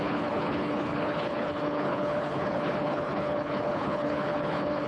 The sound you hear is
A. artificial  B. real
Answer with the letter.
A